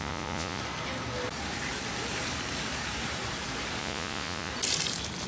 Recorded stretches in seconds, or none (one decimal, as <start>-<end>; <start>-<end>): 0.6-3.8; 4.5-5.3